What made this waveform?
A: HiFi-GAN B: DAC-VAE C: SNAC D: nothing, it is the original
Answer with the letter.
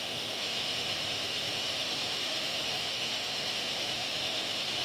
B